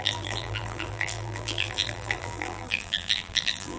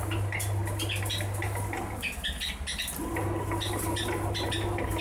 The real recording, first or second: second